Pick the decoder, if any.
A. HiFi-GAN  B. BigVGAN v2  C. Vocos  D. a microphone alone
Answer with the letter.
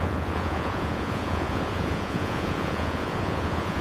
C